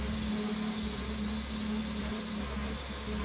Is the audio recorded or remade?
recorded